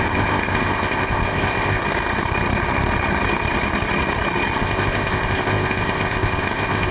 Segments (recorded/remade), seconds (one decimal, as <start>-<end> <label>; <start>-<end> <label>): 0.0-1.8 remade; 1.8-4.6 recorded; 4.6-6.9 remade